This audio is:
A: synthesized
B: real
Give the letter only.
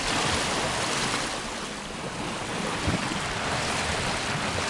B